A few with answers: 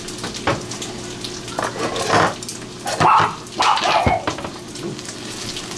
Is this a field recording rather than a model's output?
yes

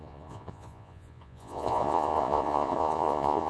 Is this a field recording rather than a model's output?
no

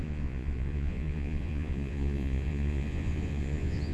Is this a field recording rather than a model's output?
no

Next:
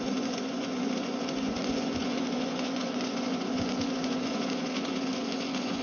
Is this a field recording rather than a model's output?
no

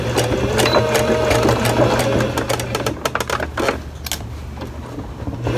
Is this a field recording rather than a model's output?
yes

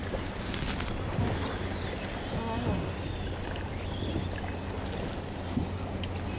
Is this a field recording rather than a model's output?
yes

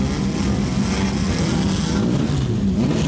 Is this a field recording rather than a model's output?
yes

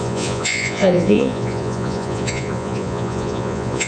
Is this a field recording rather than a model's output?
no